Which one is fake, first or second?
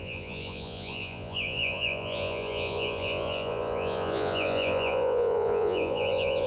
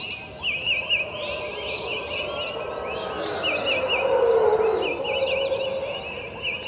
first